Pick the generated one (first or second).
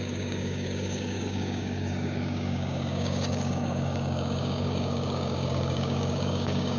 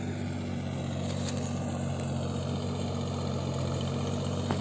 first